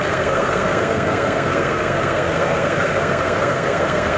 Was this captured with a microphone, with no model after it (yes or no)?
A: no